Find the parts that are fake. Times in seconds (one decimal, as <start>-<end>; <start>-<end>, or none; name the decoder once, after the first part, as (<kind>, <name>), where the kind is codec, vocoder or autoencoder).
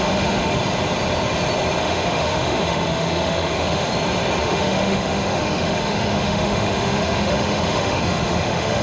0.0-0.6 (autoencoder, DAC-VAE); 1.8-3.9; 4.4-8.8